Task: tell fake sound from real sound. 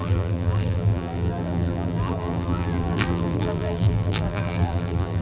fake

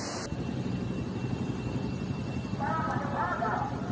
real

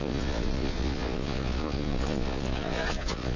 fake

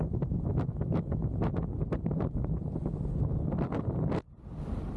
real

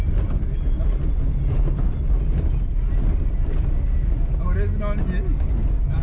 real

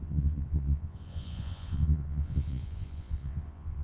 fake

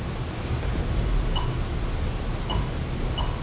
real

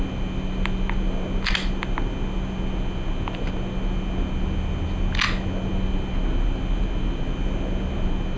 real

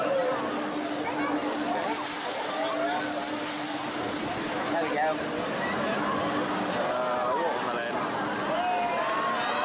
real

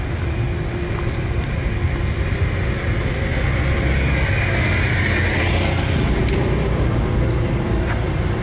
real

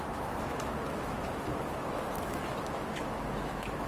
fake